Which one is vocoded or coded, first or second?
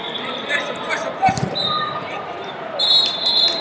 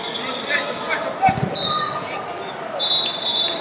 first